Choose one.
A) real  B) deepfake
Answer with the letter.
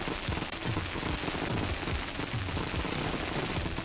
A